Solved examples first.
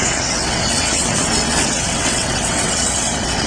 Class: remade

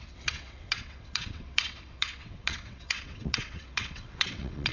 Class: remade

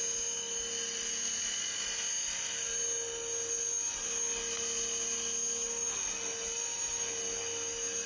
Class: recorded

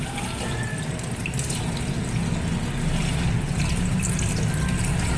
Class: recorded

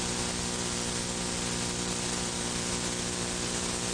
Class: recorded